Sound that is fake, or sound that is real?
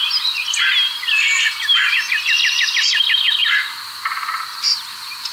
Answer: real